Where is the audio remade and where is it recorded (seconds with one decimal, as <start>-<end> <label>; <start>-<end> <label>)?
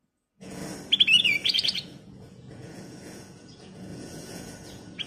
0.0-0.6 remade; 0.6-1.2 recorded; 1.2-5.1 remade